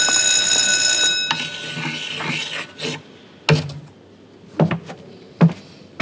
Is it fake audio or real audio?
real